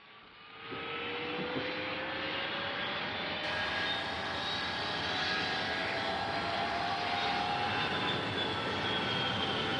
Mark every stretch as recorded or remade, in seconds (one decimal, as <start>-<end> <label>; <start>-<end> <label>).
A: 0.0-5.8 recorded; 5.8-7.2 remade; 7.2-9.8 recorded